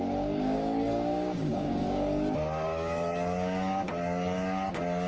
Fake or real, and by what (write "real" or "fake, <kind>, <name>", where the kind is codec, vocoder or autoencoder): fake, codec, DAC